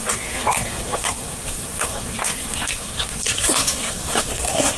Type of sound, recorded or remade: remade